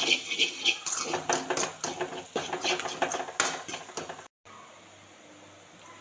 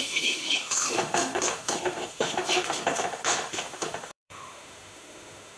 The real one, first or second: first